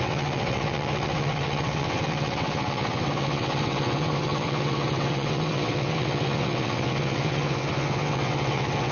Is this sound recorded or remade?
remade